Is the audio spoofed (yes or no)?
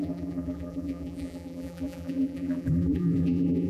yes